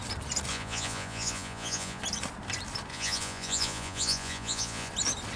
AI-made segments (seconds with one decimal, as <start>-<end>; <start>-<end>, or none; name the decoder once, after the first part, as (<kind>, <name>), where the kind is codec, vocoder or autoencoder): 0.5-2.0 (vocoder, Vocos); 2.9-4.9

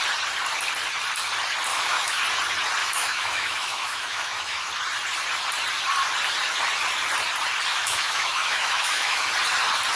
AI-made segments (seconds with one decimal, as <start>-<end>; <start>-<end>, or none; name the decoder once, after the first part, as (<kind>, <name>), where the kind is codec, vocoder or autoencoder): 1.7-2.2 (autoencoder, DAC-VAE); 2.8-4.7; 7.7-9.3

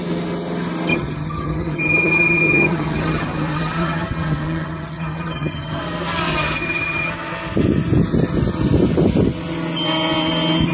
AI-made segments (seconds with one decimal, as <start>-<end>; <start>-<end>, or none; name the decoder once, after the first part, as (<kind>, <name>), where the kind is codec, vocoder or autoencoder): 0.9-5.8 (vocoder, HiFi-GAN); 6.3-7.1